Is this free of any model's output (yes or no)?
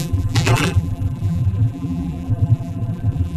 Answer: no